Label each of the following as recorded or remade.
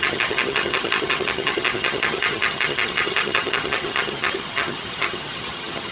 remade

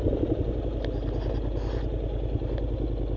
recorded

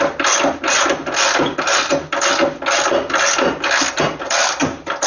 recorded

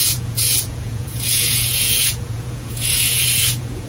remade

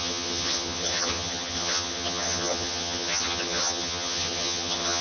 remade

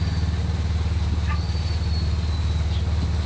recorded